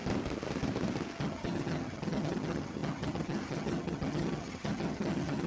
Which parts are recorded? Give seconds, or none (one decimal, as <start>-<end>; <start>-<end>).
0.0-1.2